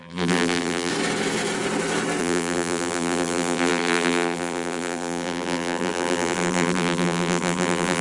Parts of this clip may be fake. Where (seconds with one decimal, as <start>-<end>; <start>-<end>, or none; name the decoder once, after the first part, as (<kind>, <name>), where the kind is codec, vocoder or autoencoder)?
0.0-0.9 (vocoder, BigVGAN v2); 2.2-8.0